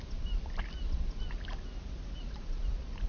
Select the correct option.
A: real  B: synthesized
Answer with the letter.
A